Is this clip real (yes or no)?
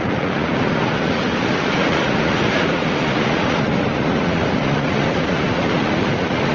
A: no